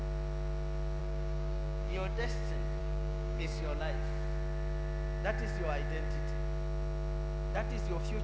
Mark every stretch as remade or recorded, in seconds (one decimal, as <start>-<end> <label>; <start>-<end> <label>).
0.0-1.0 recorded; 1.0-2.2 remade; 2.2-2.8 recorded; 2.8-3.8 remade; 3.8-8.2 recorded